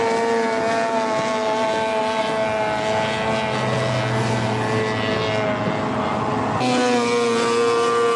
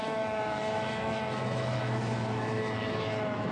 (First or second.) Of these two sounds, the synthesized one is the second